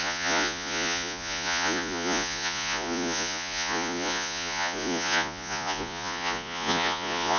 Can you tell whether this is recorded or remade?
remade